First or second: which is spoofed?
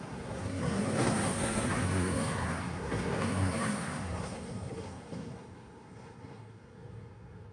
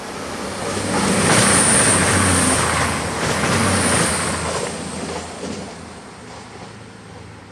first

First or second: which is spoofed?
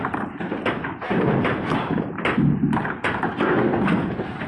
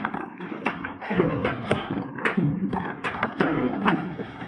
second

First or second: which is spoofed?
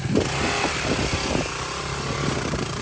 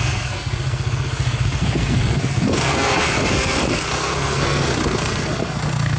second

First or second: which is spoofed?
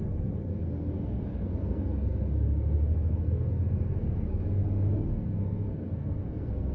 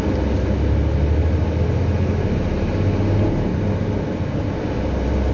first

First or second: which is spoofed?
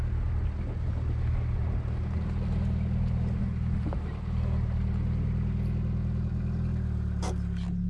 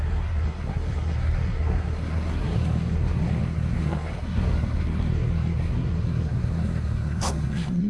second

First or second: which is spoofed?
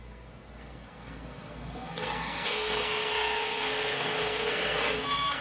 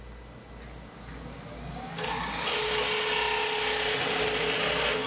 first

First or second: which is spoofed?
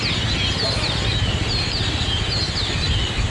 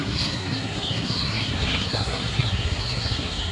second